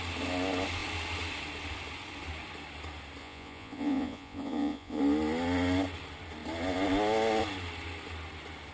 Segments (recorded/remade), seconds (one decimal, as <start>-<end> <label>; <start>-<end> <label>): 0.0-3.2 recorded; 3.2-5.0 remade; 5.0-8.7 recorded